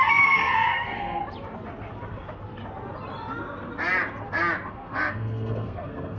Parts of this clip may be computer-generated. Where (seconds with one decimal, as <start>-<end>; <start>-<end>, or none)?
0.0-1.2; 4.7-6.2